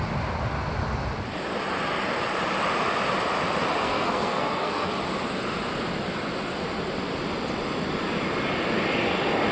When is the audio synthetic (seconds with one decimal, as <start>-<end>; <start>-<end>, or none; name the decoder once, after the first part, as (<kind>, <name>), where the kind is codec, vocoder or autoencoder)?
3.8-4.9 (codec, SNAC)